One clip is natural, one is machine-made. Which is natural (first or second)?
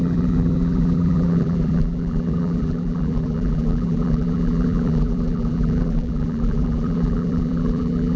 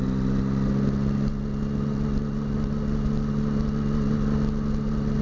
second